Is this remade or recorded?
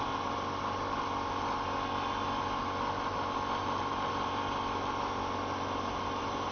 recorded